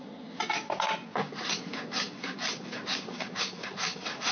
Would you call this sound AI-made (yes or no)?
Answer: no